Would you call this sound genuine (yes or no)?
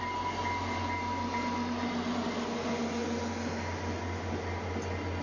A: yes